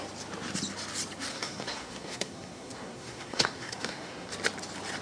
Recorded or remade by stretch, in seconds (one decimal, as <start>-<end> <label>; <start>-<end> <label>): 0.0-1.3 recorded; 1.3-4.3 remade; 4.3-5.0 recorded